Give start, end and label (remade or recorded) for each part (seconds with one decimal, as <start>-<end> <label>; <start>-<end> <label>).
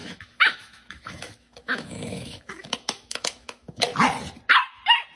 0.0-3.9 remade; 3.9-5.2 recorded